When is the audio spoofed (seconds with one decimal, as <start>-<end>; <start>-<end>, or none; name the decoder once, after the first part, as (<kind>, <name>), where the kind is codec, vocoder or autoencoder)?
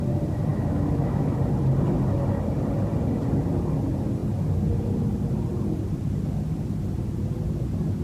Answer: 0.5-1.4 (autoencoder, DAC-VAE)